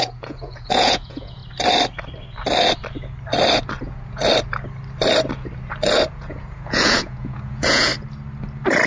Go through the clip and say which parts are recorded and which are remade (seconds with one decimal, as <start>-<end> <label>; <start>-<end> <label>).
0.0-1.4 remade; 1.4-3.8 recorded; 3.8-4.2 remade; 4.2-6.1 recorded; 6.1-7.9 remade; 7.9-8.9 recorded